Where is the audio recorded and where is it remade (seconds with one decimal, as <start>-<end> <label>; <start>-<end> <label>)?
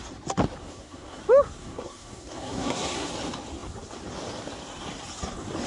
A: 0.0-0.6 recorded; 0.6-1.2 remade; 1.2-1.6 recorded; 1.6-3.1 remade; 3.1-5.7 recorded